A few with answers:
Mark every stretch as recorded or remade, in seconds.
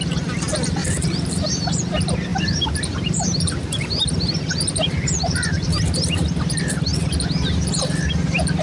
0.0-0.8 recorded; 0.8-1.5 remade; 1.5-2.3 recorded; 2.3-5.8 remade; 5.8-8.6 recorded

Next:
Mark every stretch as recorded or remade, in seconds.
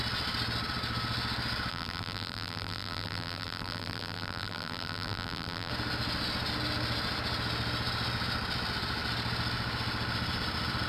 0.0-1.7 recorded; 1.7-5.7 remade; 5.7-10.9 recorded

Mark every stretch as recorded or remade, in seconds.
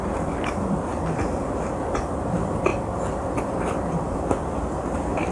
0.0-0.9 remade; 0.9-2.2 recorded; 2.2-2.7 remade; 2.7-3.4 recorded; 3.4-5.3 remade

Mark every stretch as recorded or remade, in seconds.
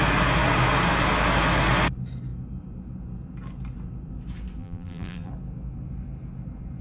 0.0-4.6 recorded; 4.6-5.3 remade; 5.3-6.8 recorded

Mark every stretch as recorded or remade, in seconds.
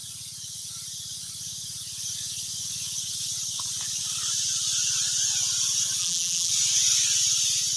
0.0-6.0 recorded; 6.0-6.5 remade; 6.5-7.8 recorded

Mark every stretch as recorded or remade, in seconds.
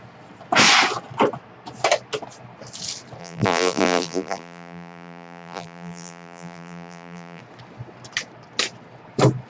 0.0-3.2 recorded; 3.2-7.4 remade; 7.4-9.5 recorded